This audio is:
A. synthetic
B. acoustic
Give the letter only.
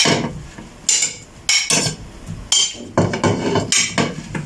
B